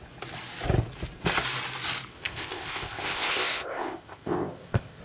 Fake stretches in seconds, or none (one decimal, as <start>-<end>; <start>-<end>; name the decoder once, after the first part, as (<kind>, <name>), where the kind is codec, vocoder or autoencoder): 2.1-5.0 (codec, ZipCodec)